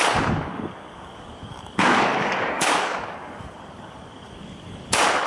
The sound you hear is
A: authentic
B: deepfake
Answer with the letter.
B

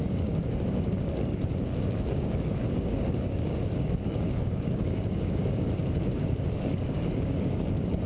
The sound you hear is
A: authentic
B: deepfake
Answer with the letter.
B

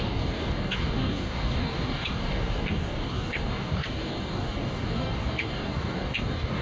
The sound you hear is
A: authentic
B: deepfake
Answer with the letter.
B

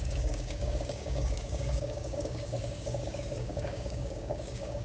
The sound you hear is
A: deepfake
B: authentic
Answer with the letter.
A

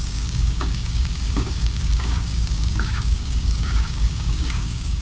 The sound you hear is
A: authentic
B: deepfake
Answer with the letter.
B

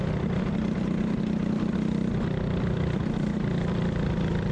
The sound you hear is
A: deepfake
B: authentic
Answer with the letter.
B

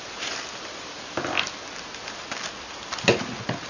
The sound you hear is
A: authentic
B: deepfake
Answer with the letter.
A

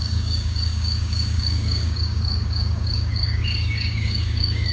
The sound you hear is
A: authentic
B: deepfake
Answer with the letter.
B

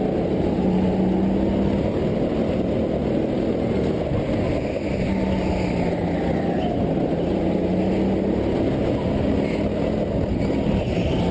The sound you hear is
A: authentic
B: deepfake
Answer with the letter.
A